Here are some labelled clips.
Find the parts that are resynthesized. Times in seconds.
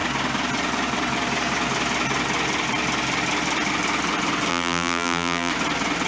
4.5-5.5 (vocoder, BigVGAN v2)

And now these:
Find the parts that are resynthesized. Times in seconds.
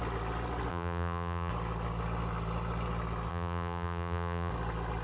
0.7-1.5 (vocoder, BigVGAN v2); 3.3-4.5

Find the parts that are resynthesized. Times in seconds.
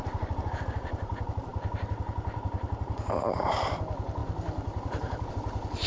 0.0-5.9 (vocoder, BigVGAN v2)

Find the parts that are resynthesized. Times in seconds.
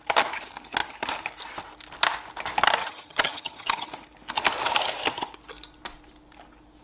2.8-3.9 (vocoder, HiFi-GAN)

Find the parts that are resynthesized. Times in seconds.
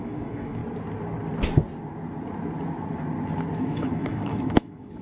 0.0-0.6 (autoencoder, DAC-VAE); 3.6-5.0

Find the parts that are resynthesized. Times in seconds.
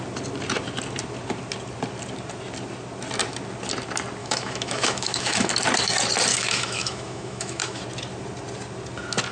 4.2-5.5 (autoencoder, DAC-VAE); 6.3-7.8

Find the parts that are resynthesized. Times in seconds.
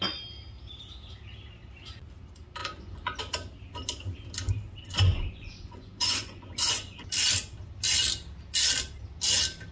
2.6-3.2 (vocoder, Vocos); 4.9-7.1